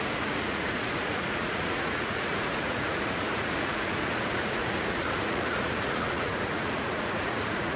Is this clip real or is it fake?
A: fake